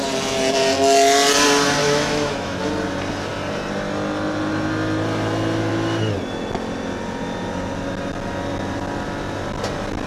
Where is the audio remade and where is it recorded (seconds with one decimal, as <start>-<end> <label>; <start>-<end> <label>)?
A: 0.0-1.8 recorded; 1.8-2.7 remade; 2.7-10.1 recorded